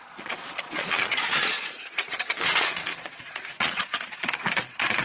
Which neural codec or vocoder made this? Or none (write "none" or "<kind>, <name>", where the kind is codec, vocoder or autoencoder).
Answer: vocoder, Vocos